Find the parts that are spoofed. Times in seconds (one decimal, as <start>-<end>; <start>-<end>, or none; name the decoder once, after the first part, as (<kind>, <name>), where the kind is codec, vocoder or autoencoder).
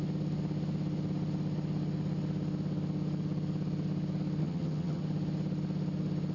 4.4-5.0 (vocoder, HiFi-GAN)